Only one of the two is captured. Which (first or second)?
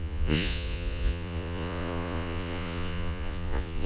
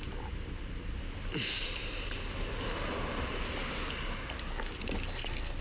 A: second